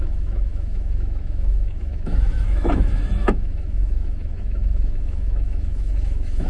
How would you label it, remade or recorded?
remade